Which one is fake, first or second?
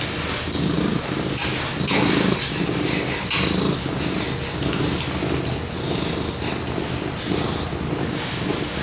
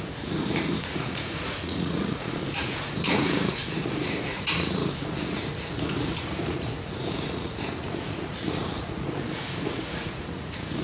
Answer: second